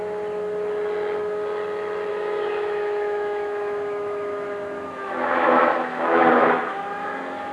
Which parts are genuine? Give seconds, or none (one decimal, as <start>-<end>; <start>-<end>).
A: 0.0-2.1; 6.6-7.5